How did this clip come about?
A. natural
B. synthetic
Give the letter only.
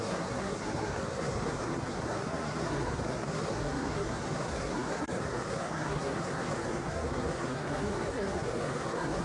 B